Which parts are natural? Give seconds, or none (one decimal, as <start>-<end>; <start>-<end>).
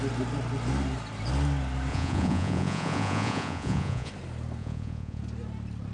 0.0-1.9; 4.1-4.6; 5.2-5.9